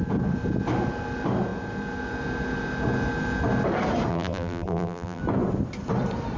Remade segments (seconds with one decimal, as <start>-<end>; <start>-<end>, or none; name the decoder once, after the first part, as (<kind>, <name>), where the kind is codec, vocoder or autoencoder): 4.1-5.2 (vocoder, BigVGAN v2)